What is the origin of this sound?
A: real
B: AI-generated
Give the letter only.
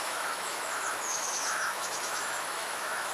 B